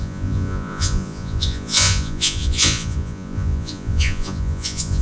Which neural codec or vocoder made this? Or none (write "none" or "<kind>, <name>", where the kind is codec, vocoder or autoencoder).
vocoder, Vocos